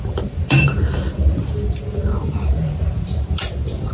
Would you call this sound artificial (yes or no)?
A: yes